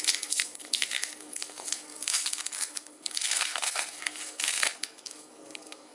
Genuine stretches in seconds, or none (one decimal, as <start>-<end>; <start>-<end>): none